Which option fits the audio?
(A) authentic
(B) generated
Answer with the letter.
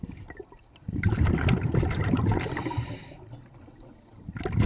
A